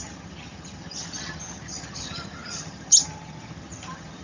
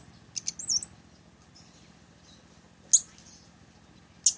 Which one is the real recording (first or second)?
second